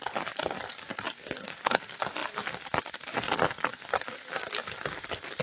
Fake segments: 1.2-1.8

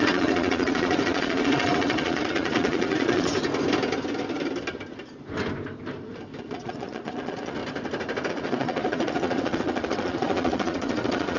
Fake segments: 0.0-3.3; 6.4-7.6; 8.3-11.4

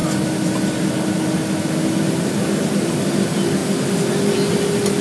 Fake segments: none

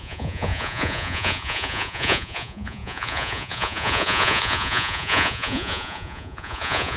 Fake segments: 0.0-7.0